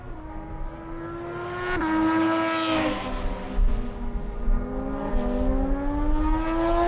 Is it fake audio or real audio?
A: real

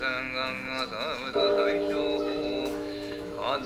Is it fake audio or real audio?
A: fake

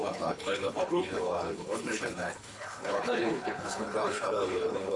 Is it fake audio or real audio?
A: fake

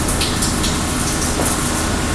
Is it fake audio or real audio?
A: real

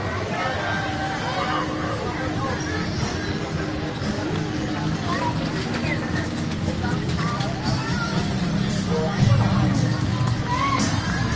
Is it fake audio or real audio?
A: real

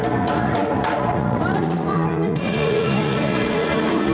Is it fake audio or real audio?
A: fake